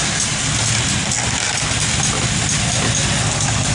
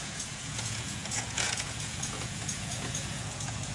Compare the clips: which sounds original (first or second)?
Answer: first